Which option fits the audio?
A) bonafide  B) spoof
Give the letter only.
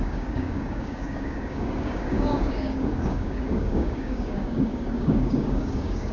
B